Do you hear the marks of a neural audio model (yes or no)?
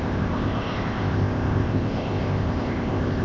yes